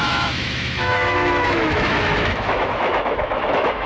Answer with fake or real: fake